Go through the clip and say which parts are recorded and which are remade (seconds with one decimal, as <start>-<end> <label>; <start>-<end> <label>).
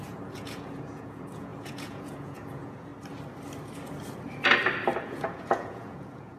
0.0-2.9 remade; 2.9-5.0 recorded; 5.0-6.4 remade